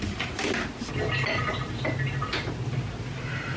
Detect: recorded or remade recorded